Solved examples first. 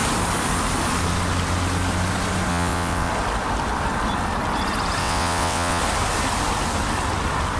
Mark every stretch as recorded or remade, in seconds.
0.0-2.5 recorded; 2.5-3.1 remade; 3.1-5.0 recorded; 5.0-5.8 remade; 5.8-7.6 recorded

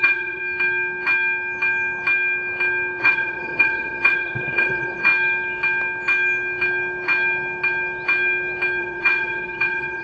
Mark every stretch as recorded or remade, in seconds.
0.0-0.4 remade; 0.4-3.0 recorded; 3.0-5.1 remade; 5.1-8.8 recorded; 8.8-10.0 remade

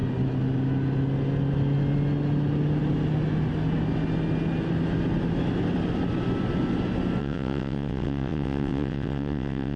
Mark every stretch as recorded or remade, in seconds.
0.0-7.2 recorded; 7.2-9.8 remade

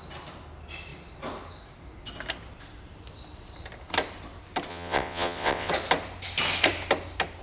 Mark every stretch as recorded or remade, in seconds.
0.0-4.7 recorded; 4.7-5.7 remade; 5.7-7.4 recorded